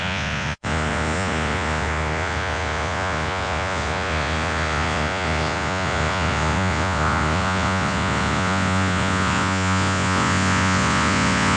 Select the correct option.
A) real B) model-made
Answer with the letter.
B